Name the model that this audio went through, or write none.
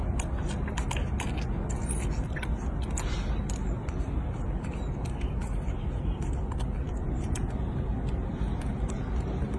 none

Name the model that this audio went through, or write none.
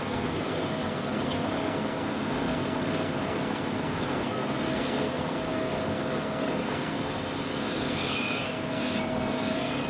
codec, SNAC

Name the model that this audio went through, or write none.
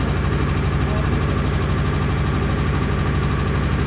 none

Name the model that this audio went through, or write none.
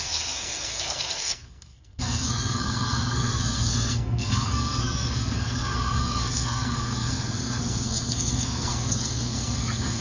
codec, SNAC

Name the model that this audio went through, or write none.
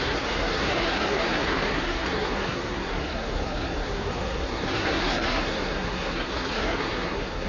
codec, SNAC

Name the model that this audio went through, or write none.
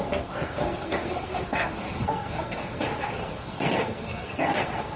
codec, SNAC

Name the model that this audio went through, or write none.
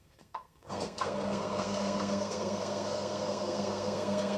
codec, SNAC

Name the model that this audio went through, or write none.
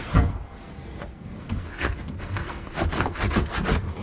codec, SNAC